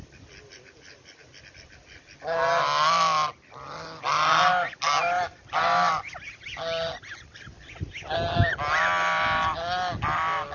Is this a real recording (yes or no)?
yes